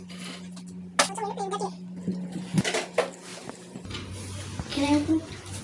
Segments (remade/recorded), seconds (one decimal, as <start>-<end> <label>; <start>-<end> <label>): 0.0-3.3 recorded; 3.3-4.2 remade; 4.2-5.6 recorded